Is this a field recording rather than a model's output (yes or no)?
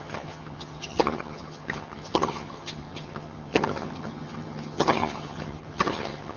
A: no